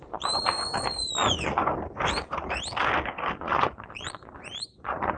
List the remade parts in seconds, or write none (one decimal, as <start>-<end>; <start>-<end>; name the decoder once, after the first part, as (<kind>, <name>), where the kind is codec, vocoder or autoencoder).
0.0-1.6 (vocoder, Vocos); 3.4-5.2